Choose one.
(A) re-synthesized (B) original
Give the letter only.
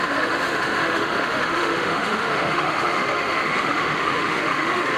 A